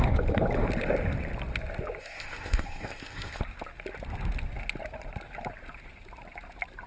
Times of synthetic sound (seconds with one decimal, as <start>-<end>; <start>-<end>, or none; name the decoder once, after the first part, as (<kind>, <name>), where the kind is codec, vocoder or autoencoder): 2.0-3.4 (codec, ZipCodec)